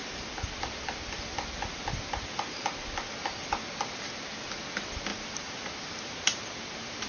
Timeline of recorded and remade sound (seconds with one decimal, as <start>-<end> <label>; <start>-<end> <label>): 0.0-7.1 recorded